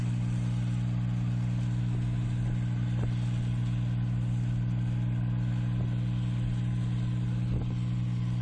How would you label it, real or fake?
real